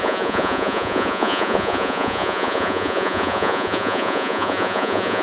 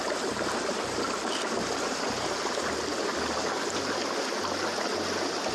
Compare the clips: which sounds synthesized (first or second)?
first